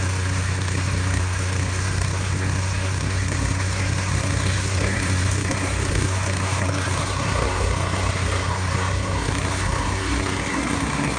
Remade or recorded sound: remade